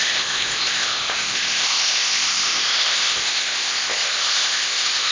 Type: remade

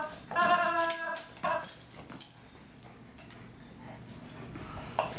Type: recorded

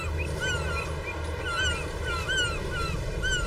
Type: recorded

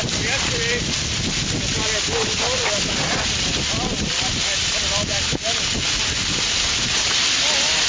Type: recorded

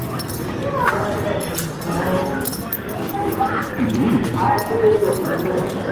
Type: recorded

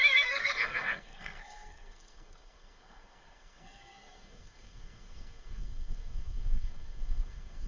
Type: remade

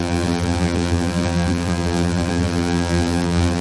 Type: remade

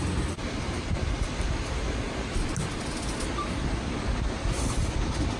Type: recorded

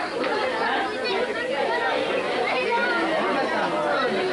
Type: recorded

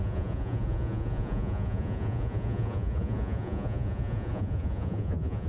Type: remade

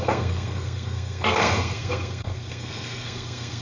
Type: remade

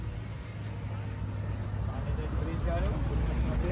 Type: recorded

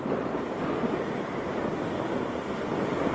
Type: recorded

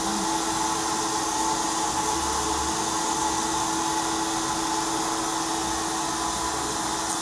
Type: recorded